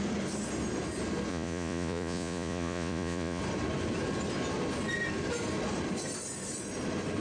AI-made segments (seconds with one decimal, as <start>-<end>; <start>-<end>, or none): 1.3-3.4